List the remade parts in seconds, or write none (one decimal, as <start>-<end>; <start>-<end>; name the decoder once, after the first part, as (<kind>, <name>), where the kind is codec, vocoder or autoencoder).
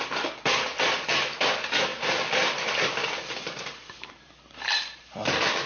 1.9-5.3 (vocoder, BigVGAN v2)